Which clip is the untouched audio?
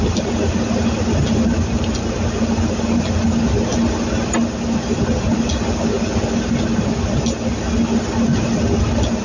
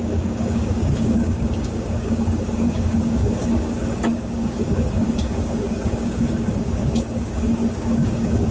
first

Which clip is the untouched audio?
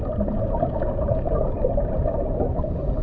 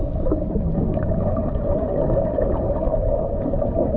first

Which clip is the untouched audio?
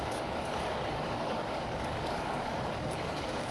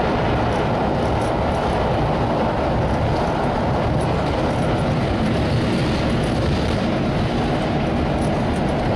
second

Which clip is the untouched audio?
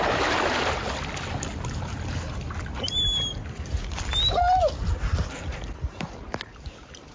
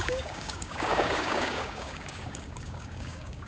first